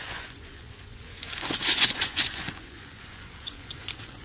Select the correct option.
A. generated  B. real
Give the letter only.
A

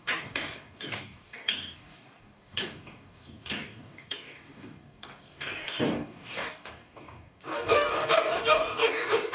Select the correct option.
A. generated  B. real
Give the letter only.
A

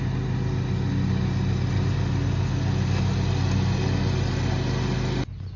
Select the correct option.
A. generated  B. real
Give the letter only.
B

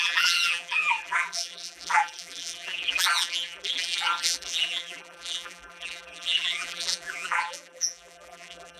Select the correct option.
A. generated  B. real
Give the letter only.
A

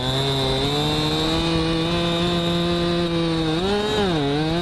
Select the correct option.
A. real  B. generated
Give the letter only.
A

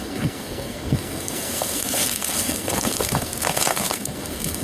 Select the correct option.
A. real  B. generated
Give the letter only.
B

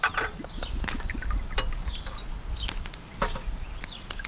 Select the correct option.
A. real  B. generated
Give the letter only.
A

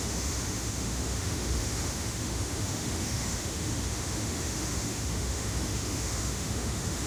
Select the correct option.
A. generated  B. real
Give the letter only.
A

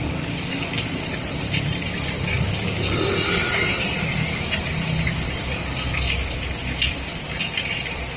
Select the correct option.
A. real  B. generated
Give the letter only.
B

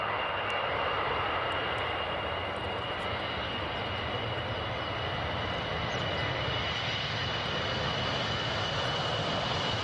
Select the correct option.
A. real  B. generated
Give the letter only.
A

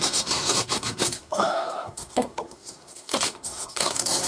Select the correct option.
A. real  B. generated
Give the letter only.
B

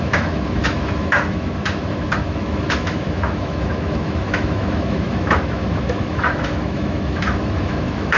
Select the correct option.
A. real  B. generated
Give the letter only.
B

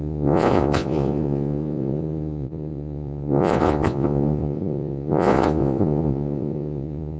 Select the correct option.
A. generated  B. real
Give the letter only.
A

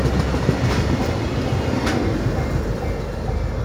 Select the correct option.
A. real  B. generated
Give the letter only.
A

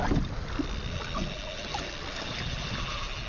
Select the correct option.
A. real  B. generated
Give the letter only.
A